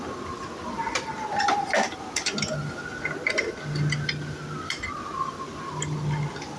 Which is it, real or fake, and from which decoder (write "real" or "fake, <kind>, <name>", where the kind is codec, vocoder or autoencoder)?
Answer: real